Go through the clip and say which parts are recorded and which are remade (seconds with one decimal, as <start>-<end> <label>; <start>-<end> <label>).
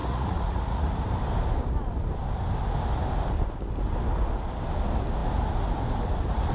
0.0-0.9 remade; 0.9-6.5 recorded